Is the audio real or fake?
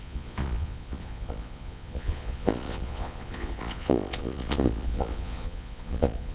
fake